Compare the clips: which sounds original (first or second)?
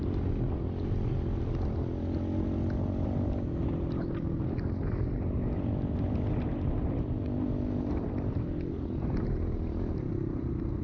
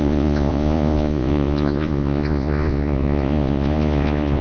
first